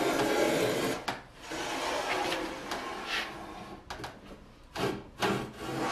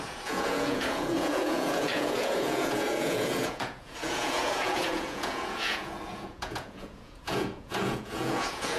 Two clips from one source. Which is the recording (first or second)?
first